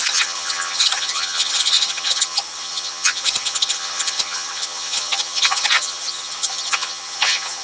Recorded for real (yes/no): no